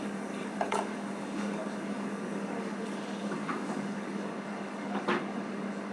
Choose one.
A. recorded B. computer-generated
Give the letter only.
B